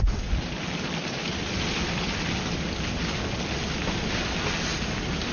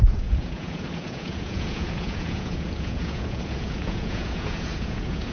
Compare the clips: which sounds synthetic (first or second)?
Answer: second